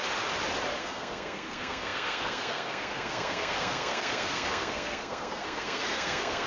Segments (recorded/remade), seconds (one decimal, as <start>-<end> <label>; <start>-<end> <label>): 0.0-0.8 recorded; 0.8-6.5 remade